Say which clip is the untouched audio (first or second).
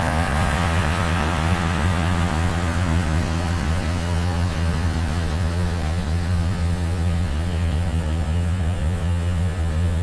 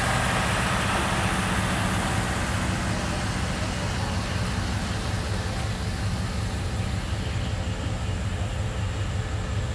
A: second